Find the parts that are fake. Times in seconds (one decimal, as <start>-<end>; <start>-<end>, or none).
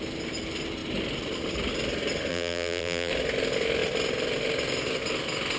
2.3-3.1